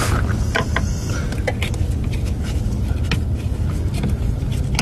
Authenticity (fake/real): real